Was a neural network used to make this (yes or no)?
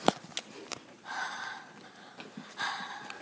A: no